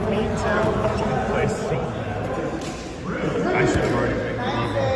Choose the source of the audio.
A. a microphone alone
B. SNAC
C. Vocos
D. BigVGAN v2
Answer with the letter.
A